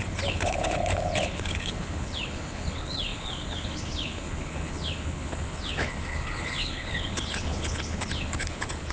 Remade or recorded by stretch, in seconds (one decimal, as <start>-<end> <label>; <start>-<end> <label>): 0.0-8.9 remade

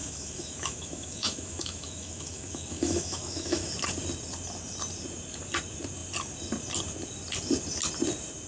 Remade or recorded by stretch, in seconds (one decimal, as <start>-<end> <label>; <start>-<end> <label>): 0.0-3.7 remade; 3.7-8.5 recorded

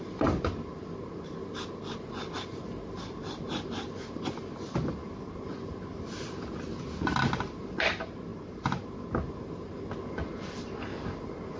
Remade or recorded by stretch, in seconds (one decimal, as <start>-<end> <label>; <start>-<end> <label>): 0.0-11.6 recorded

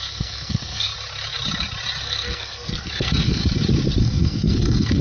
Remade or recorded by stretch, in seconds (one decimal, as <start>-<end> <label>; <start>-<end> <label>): 0.0-0.9 remade; 0.9-2.0 recorded; 2.0-3.4 remade; 3.4-4.0 recorded; 4.0-5.0 remade

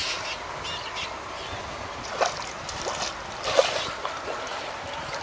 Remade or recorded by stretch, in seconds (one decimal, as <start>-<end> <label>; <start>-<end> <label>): 0.0-3.1 recorded; 3.1-5.2 remade